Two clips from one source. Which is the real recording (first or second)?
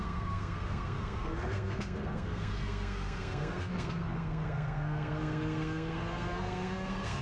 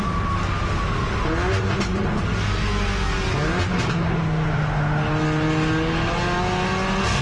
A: second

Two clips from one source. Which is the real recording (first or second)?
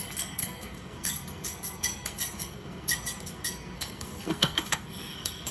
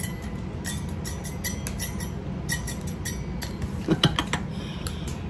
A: second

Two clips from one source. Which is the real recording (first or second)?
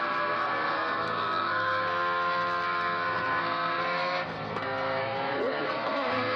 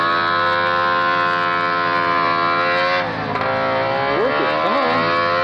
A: second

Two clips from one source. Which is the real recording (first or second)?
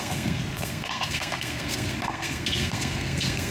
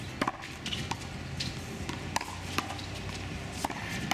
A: second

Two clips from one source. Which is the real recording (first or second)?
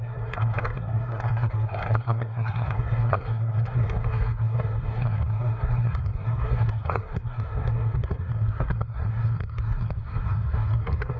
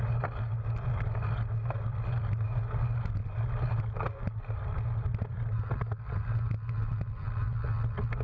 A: second